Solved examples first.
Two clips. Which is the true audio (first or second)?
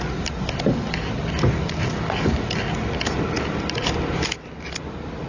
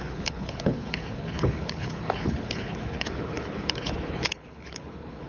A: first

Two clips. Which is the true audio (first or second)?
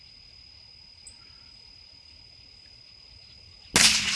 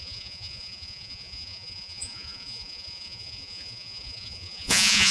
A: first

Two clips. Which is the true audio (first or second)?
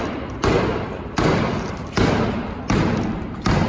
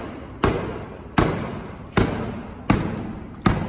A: second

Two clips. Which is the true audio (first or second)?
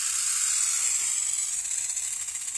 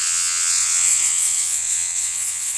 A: first